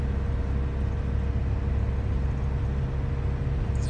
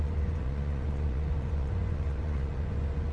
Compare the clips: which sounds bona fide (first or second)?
first